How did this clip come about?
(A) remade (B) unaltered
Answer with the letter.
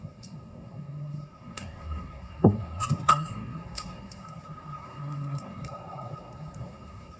A